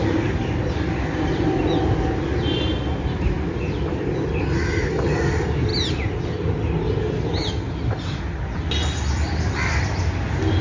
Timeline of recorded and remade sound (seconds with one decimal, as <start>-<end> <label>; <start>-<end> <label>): 0.0-10.6 recorded